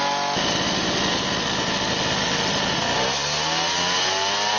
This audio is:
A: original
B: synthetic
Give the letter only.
A